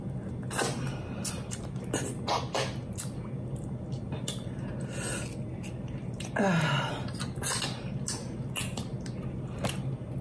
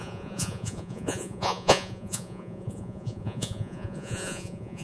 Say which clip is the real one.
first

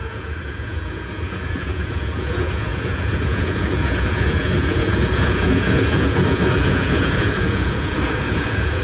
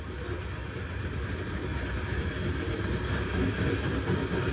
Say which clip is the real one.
second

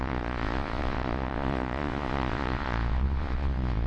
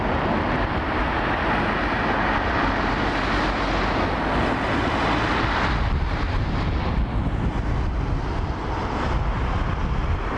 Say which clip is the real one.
second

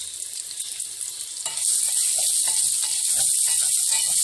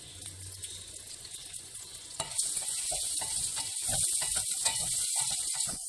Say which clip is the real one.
first